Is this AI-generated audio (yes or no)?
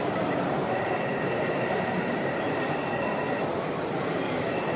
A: yes